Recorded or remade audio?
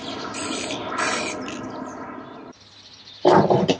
recorded